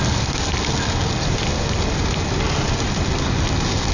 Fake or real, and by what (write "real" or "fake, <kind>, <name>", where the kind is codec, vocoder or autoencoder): real